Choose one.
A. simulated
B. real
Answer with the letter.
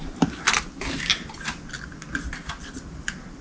B